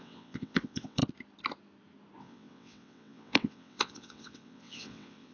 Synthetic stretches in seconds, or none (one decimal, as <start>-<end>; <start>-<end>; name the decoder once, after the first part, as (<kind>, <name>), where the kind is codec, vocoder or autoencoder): 0.0-1.0 (vocoder, WaveNeXt); 2.2-5.3